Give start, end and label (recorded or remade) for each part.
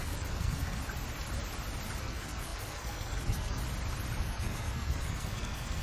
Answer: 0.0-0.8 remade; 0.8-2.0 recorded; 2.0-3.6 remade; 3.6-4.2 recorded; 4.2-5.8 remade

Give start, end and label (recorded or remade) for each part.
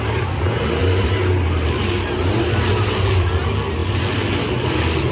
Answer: 0.0-0.8 recorded; 0.8-3.3 remade; 3.3-5.1 recorded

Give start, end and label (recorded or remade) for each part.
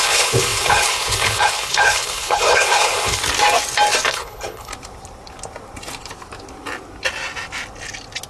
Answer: 0.0-3.2 remade; 3.2-4.0 recorded; 4.0-4.7 remade; 4.7-8.3 recorded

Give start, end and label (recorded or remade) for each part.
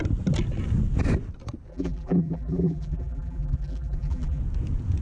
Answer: 0.0-1.7 recorded; 1.7-4.4 remade; 4.4-5.0 recorded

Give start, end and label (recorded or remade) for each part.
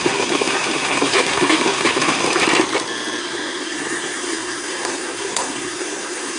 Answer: 0.0-2.2 remade; 2.2-3.2 recorded; 3.2-6.4 remade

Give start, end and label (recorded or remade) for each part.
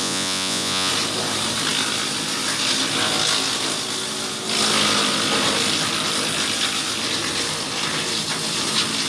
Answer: 0.0-0.9 remade; 0.9-9.1 recorded